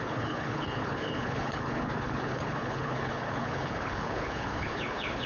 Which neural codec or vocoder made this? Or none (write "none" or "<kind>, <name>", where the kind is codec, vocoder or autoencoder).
codec, HILCodec